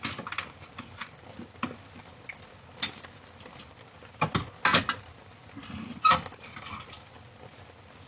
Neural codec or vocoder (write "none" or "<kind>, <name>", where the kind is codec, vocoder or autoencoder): none